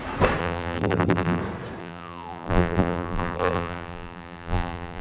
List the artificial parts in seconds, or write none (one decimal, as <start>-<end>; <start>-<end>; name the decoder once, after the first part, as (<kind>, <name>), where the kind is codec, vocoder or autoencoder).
0.4-1.4 (vocoder, BigVGAN v2); 1.8-5.0